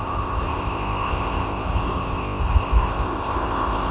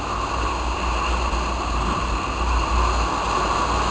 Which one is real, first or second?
second